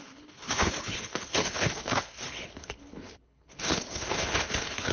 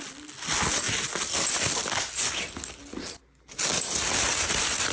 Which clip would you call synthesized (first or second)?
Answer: first